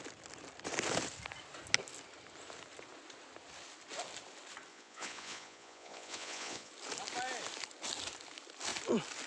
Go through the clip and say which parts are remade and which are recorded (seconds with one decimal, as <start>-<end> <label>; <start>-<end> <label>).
0.0-4.7 recorded; 4.7-6.7 remade; 6.7-9.3 recorded